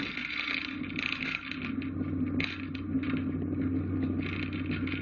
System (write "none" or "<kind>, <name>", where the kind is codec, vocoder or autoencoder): none